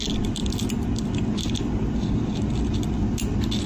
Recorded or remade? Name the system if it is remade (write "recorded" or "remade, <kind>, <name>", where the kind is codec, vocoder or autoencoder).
recorded